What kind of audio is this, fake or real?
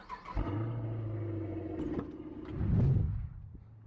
real